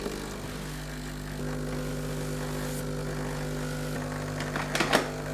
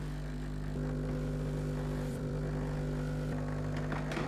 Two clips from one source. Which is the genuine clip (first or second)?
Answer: first